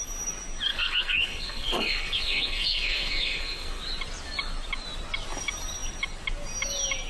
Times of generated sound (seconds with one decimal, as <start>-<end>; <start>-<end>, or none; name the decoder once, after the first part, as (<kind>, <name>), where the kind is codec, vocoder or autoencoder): 0.7-3.8 (codec, SNAC)